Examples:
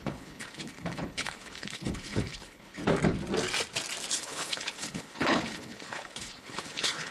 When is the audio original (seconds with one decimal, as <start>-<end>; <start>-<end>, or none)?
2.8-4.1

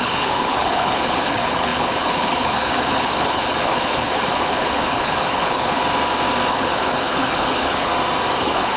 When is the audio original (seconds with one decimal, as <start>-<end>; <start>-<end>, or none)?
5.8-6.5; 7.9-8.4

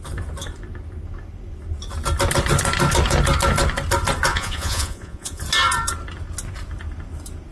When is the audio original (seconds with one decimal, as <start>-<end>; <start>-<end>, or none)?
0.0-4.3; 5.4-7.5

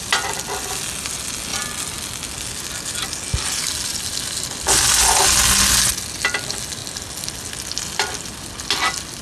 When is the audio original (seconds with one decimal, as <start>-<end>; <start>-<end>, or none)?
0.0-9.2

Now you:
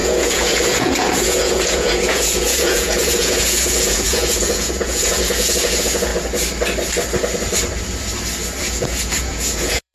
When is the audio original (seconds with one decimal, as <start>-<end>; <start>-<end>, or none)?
6.1-8.6

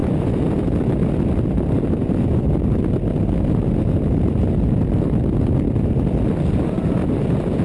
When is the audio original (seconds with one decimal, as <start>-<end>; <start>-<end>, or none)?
0.0-7.6

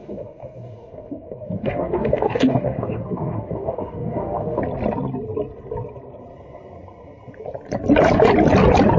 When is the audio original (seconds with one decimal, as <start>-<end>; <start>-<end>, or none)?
4.6-9.0